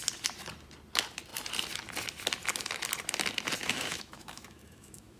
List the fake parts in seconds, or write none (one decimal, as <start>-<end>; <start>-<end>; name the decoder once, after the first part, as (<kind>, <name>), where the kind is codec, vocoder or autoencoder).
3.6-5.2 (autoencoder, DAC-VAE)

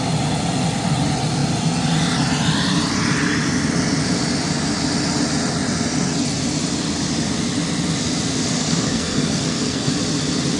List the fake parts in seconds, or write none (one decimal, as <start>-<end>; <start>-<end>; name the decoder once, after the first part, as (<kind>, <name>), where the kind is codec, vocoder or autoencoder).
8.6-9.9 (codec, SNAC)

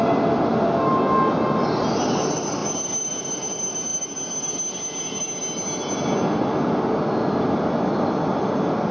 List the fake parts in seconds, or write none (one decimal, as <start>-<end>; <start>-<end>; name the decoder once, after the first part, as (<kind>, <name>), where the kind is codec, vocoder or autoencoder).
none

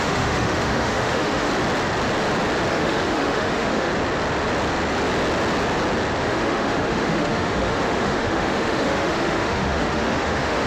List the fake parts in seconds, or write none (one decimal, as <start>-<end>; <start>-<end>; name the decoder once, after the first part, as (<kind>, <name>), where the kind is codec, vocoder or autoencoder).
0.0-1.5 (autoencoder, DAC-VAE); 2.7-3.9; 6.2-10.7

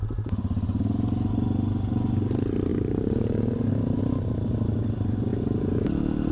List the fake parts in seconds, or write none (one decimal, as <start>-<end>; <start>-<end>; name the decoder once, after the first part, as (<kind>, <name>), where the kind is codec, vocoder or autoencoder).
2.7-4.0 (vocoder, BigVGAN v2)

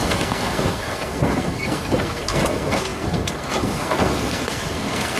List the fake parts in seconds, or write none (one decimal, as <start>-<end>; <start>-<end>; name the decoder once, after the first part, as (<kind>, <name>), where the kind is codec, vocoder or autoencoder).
0.0-5.2 (codec, SNAC)

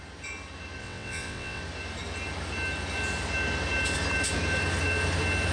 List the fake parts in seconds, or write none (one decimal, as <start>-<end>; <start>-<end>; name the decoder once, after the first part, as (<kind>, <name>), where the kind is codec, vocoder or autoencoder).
0.8-1.6 (vocoder, WaveNeXt)

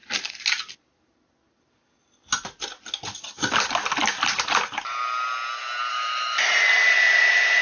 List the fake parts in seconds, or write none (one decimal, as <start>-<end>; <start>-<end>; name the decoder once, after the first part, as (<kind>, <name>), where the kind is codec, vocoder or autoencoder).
5.9-6.4 (autoencoder, DAC-VAE)